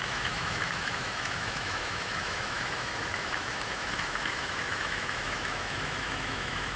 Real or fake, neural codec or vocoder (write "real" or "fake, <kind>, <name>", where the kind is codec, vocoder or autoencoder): fake, autoencoder, DAC-VAE